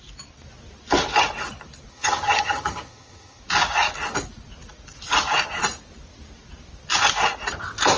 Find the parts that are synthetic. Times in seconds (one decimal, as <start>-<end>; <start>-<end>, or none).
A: 1.9-3.4